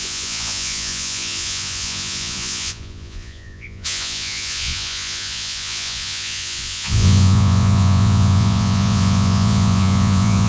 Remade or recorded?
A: remade